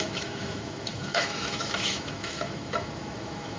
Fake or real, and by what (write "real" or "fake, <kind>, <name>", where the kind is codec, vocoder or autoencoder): fake, autoencoder, DAC-VAE